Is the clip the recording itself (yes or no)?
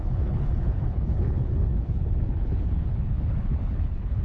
no